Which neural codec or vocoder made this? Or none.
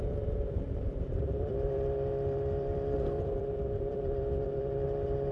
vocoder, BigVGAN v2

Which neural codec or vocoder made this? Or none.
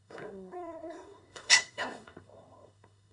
codec, SNAC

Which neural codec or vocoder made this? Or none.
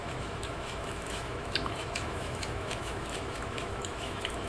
autoencoder, DAC-VAE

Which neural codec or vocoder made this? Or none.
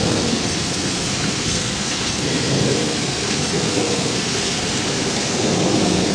codec, SNAC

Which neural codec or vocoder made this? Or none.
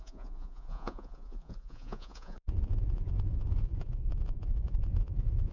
vocoder, Vocos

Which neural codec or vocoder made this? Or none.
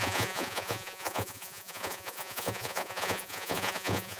vocoder, Vocos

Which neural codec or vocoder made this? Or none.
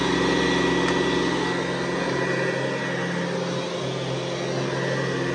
none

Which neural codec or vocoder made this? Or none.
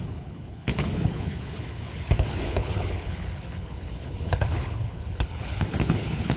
codec, HILCodec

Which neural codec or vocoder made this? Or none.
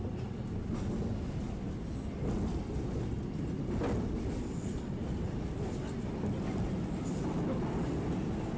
none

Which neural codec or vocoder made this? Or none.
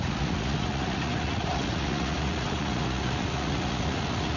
vocoder, Vocos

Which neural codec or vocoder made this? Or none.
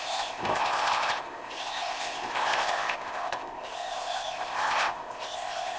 codec, ZipCodec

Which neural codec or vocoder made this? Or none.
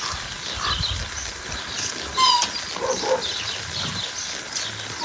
none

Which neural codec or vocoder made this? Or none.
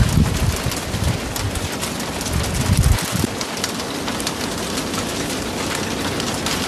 none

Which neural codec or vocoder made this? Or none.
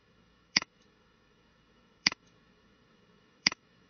autoencoder, DAC-VAE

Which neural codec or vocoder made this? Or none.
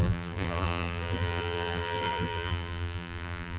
vocoder, BigVGAN v2